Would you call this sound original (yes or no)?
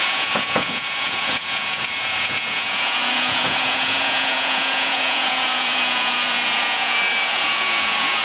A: no